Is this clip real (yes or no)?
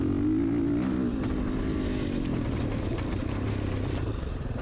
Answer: yes